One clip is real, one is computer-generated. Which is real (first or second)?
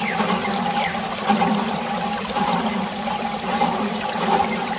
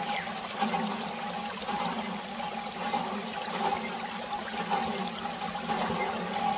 second